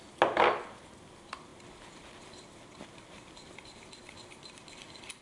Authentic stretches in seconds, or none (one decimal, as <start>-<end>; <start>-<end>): 0.0-5.2